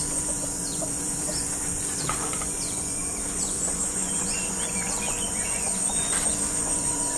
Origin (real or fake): fake